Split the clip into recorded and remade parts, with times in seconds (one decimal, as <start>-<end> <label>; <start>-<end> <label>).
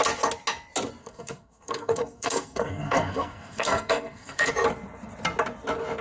0.0-1.0 recorded; 1.0-4.5 remade; 4.5-6.0 recorded